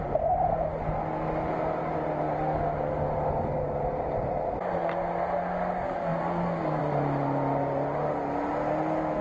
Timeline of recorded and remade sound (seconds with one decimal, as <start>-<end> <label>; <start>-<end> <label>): 0.0-9.2 recorded